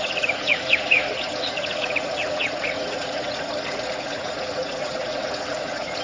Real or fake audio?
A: fake